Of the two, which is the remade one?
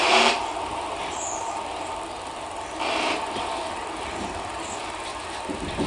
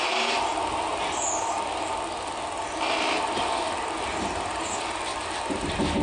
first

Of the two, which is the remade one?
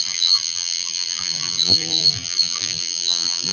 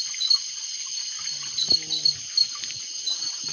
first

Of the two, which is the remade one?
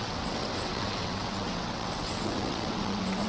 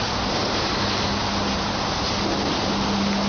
first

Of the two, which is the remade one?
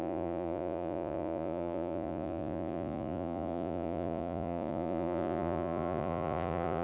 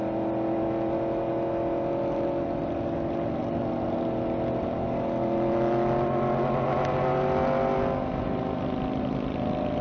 first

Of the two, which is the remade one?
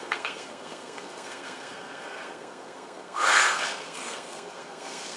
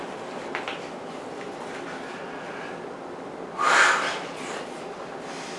first